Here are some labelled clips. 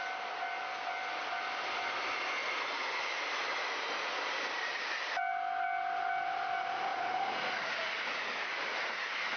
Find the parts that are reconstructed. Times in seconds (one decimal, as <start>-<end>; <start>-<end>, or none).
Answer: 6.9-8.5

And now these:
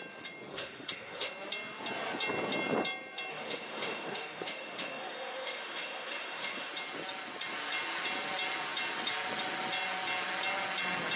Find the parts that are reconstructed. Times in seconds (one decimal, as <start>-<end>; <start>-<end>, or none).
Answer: 0.5-1.3; 3.3-6.7

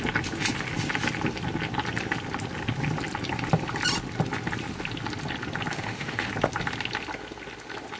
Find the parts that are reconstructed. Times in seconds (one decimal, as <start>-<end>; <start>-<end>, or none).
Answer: 5.7-6.3